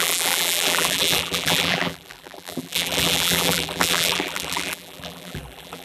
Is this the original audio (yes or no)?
no